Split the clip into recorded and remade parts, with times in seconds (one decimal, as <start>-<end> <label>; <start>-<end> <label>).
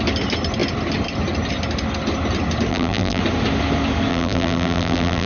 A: 0.0-2.7 recorded; 2.7-3.2 remade; 3.2-4.1 recorded; 4.1-5.3 remade